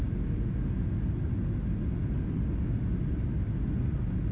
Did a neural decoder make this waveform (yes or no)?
no